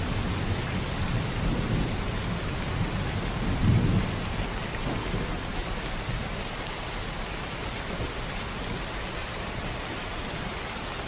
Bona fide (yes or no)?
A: yes